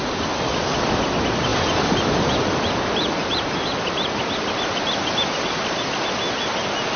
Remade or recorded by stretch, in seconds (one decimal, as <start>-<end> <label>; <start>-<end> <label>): 0.0-1.5 recorded; 1.5-2.7 remade; 2.7-7.0 recorded

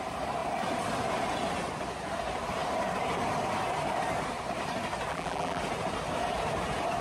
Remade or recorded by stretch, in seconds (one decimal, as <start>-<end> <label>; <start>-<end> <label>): 0.0-5.1 recorded; 5.1-5.6 remade; 5.6-7.0 recorded

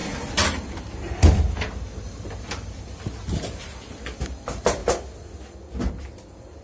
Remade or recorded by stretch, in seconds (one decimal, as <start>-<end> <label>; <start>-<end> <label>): 0.0-4.8 remade; 4.8-5.9 recorded; 5.9-6.6 remade

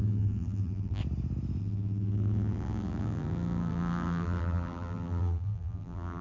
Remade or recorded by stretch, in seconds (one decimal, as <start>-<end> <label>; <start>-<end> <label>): 0.0-1.0 remade; 1.0-1.6 recorded; 1.6-6.2 remade